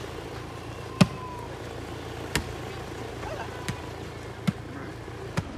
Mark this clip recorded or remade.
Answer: recorded